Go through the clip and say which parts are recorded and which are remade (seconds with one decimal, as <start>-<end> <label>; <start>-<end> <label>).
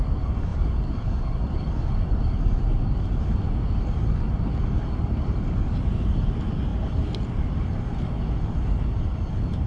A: 0.0-9.7 recorded